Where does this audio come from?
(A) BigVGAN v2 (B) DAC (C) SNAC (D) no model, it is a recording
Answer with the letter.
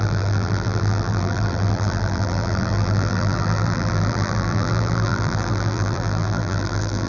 A